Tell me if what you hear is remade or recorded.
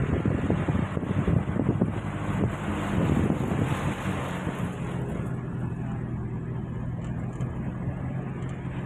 recorded